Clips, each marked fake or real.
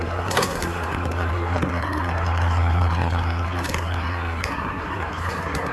fake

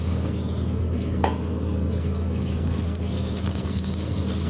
fake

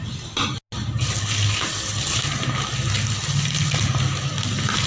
real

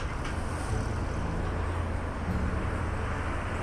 real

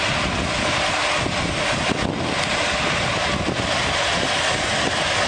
real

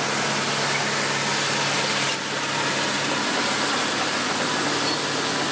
real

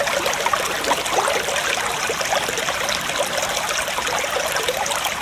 real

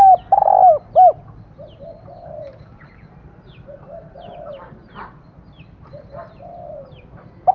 real